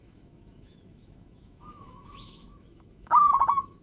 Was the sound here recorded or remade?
remade